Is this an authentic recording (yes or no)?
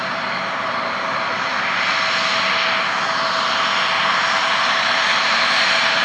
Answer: yes